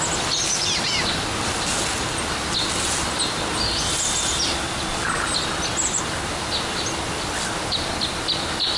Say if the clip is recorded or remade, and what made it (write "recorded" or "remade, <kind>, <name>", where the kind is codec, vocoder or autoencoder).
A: recorded